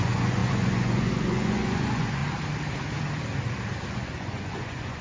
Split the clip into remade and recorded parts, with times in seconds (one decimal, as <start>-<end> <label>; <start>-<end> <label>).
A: 0.0-2.2 remade; 2.2-3.9 recorded; 3.9-5.0 remade